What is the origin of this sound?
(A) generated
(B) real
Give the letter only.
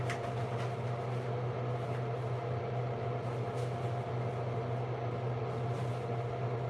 B